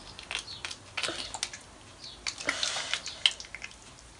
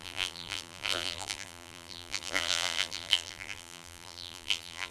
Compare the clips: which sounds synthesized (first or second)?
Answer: second